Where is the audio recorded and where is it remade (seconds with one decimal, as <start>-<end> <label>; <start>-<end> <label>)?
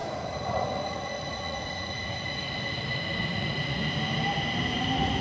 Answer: 0.0-2.5 remade; 2.5-3.2 recorded; 3.2-3.9 remade; 3.9-5.2 recorded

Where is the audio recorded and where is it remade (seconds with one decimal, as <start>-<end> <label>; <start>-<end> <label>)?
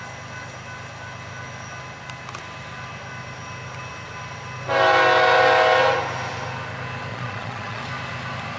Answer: 0.0-7.1 recorded; 7.1-7.8 remade; 7.8-8.6 recorded